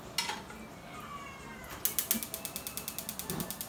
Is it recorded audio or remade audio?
recorded